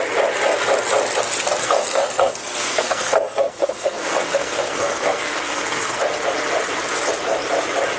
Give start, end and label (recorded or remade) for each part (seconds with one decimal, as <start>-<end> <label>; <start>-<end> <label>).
0.0-1.6 recorded; 1.6-6.0 remade; 6.0-8.0 recorded